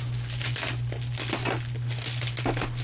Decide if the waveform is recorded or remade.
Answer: recorded